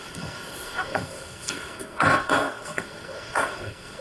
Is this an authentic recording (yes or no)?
no